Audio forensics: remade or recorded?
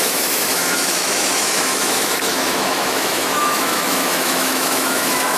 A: remade